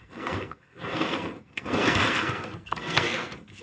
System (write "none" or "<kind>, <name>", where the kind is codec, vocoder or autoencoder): codec, SNAC